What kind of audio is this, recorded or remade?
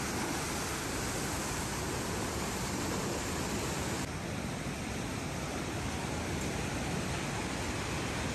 recorded